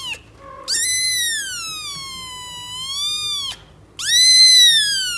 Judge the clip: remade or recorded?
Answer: recorded